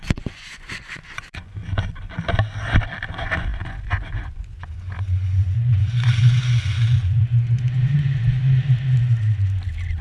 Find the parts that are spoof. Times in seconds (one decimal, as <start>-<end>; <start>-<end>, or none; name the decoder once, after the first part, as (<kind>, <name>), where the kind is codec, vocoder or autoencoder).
0.0-1.6 (vocoder, Vocos); 3.1-8.4